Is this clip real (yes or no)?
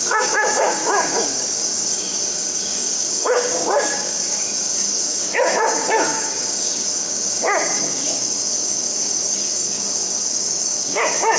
no